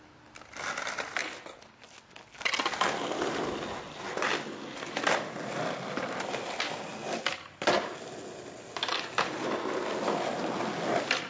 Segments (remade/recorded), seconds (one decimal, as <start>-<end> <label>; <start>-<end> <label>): 0.0-11.3 recorded